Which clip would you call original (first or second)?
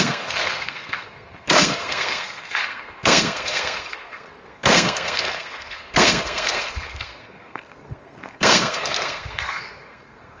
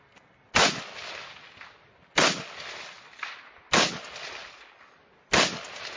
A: second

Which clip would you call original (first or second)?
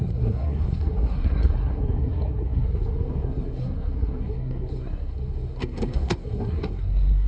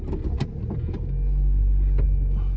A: second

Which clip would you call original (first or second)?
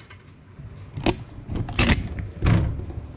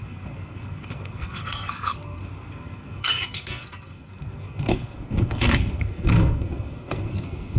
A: first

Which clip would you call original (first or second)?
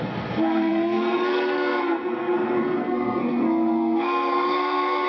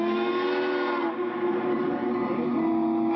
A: second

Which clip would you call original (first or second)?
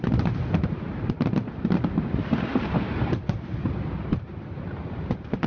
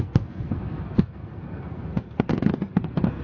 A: first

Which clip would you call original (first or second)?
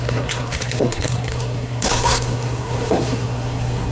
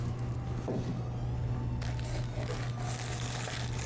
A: second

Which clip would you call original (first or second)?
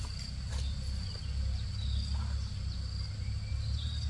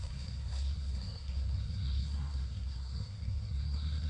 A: first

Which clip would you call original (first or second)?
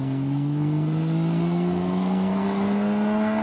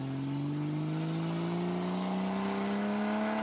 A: second